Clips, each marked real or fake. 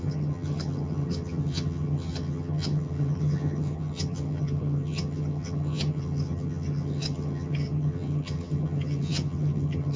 fake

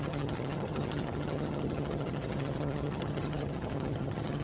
fake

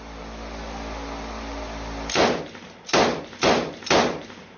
real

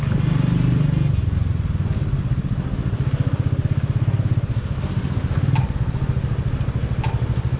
real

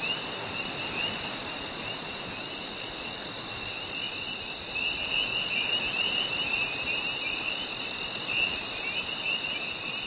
real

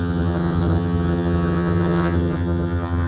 fake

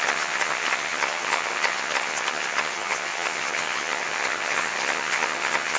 fake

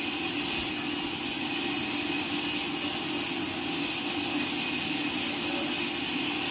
real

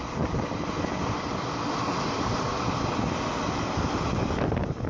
real